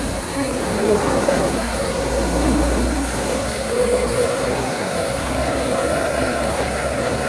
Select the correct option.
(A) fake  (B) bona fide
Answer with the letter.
A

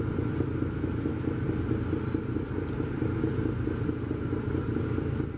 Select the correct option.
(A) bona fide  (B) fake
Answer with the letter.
A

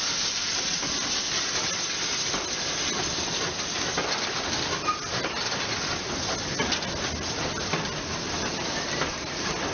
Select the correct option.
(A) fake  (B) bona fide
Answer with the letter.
B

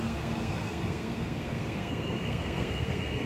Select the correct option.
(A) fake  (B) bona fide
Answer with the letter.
A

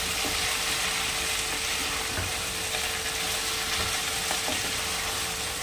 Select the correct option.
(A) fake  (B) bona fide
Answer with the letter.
B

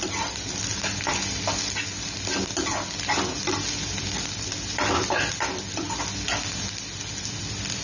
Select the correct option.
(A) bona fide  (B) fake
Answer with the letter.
A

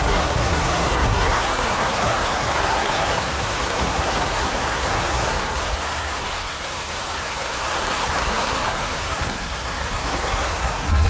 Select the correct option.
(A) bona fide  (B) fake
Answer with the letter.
B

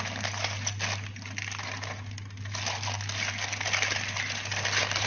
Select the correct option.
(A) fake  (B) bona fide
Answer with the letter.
B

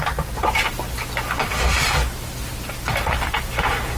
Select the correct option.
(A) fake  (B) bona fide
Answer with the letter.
B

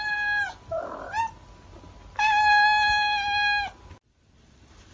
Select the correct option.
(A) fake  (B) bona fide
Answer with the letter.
B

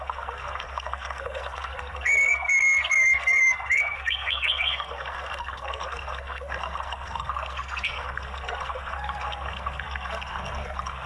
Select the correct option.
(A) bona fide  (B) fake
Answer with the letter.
B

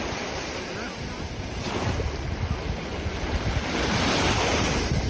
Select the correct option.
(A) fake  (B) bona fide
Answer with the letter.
B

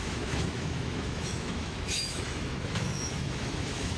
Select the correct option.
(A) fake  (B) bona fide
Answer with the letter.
A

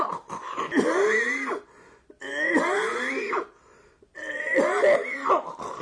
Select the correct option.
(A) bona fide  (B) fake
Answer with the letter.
A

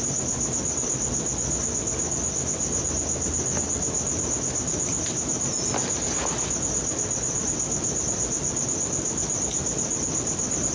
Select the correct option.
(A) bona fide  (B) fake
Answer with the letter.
A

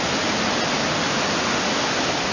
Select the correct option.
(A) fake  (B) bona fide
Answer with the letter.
B